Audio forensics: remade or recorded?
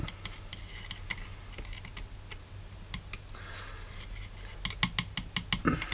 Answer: recorded